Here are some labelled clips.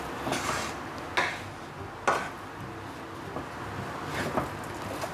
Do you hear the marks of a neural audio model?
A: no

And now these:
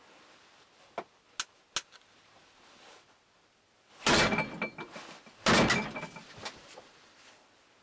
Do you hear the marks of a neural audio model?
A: no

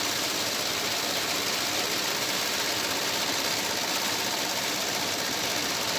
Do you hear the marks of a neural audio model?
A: no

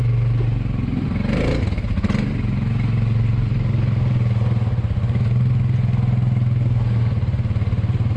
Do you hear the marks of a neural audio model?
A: no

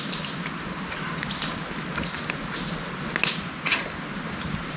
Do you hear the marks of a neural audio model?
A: no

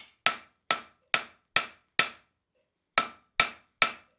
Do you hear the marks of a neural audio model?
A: no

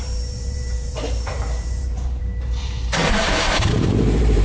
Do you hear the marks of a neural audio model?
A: yes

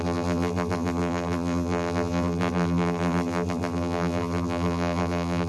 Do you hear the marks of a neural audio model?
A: yes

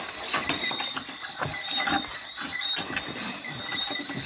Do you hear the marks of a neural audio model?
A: yes